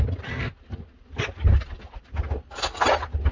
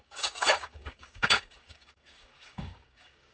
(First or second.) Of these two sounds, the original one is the first